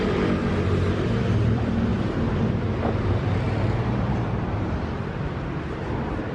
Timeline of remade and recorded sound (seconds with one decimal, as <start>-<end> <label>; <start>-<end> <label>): 0.0-6.3 remade